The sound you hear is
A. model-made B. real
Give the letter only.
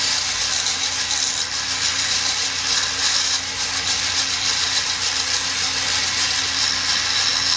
B